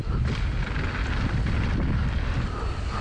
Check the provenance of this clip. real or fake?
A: real